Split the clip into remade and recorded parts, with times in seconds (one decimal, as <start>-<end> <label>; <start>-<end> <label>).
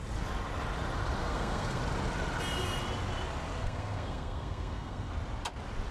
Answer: 0.0-1.2 recorded; 1.2-1.8 remade; 1.8-3.6 recorded; 3.6-5.1 remade; 5.1-5.9 recorded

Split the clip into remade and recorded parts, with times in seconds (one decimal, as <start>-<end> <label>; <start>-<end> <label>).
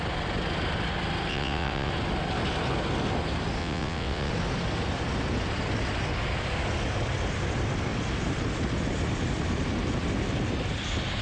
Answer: 0.0-1.3 recorded; 1.3-1.9 remade; 1.9-3.6 recorded; 3.6-4.3 remade; 4.3-11.2 recorded